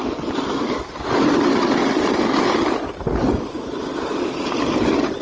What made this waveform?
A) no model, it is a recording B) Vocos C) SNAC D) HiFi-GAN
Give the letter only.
A